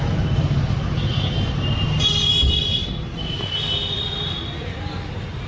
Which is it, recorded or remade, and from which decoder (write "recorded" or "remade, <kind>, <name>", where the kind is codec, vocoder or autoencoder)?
recorded